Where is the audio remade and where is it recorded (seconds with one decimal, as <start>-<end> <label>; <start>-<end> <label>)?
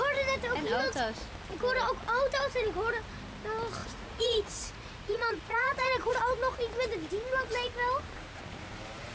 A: 0.0-3.8 recorded; 3.8-6.1 remade; 6.1-9.1 recorded